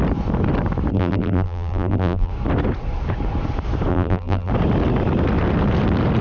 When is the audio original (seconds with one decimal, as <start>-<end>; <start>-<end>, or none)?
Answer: 0.0-0.9; 2.3-3.9; 4.5-6.2